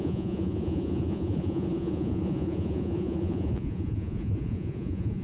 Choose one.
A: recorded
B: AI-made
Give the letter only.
B